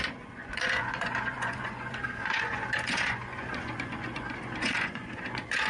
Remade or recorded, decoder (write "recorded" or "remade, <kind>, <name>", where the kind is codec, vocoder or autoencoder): remade, vocoder, Vocos